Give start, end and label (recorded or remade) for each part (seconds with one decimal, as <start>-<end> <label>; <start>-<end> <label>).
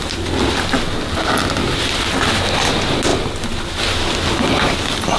0.0-5.2 recorded